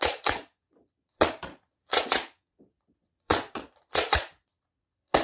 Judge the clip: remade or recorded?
remade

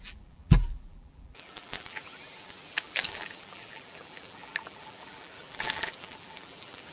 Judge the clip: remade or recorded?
remade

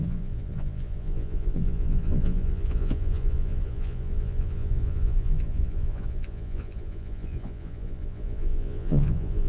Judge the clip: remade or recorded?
remade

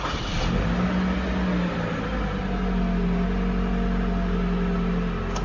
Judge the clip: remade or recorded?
recorded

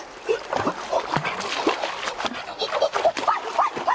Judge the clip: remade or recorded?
recorded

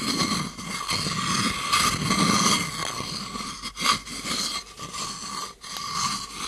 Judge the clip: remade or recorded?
recorded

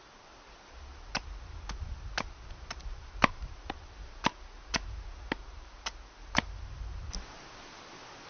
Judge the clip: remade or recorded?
recorded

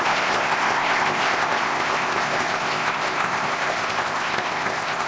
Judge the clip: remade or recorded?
remade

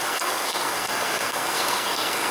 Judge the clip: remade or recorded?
remade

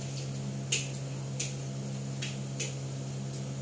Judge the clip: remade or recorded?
recorded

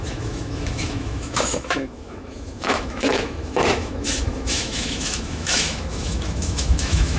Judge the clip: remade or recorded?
remade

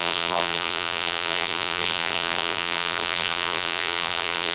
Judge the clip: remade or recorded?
remade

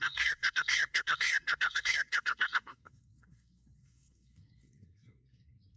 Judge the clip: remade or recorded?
remade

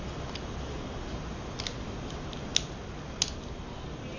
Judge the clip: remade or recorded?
recorded